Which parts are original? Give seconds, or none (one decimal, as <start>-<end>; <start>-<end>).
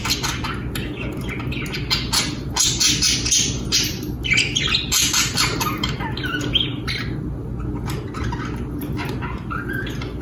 0.0-10.2